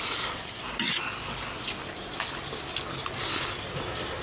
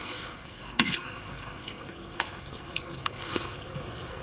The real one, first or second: first